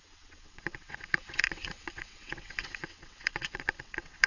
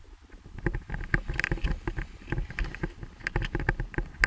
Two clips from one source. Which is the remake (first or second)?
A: first